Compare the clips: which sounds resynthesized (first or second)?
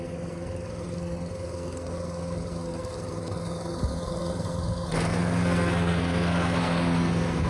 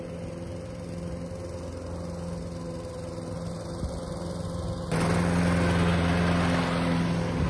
first